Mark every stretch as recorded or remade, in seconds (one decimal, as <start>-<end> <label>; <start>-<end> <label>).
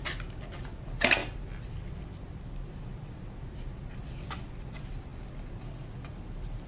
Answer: 0.0-6.7 recorded